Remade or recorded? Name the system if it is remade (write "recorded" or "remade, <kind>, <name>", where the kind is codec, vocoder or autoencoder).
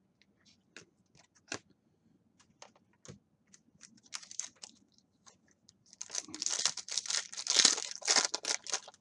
recorded